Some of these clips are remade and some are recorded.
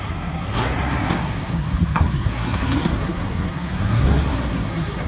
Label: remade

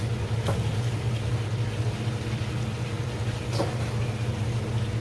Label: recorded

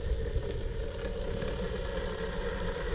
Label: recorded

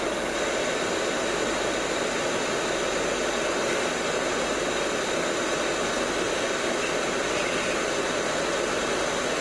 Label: recorded